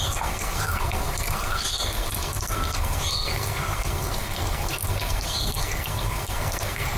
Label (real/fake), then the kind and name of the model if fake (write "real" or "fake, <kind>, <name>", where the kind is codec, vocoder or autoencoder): fake, codec, SNAC